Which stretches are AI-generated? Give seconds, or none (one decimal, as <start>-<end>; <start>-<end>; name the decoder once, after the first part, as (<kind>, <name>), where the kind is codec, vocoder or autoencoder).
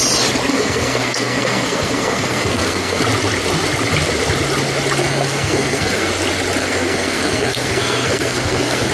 0.5-3.0 (codec, SNAC); 5.0-6.1; 6.6-8.9